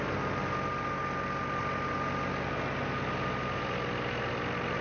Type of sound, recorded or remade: recorded